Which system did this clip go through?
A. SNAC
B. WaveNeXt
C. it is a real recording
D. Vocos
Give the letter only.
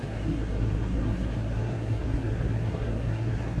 A